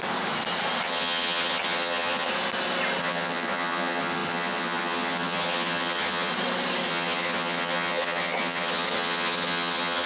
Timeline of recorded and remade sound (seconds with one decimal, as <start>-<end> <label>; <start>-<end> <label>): 0.0-0.8 recorded; 0.8-2.3 remade; 2.3-3.0 recorded; 3.0-6.3 remade; 6.3-6.9 recorded; 6.9-10.1 remade